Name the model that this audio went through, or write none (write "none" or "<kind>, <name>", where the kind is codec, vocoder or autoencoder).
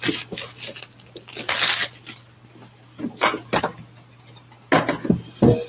none